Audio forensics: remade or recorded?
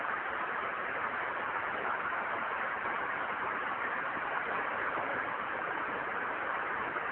recorded